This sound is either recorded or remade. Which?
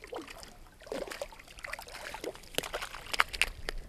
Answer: recorded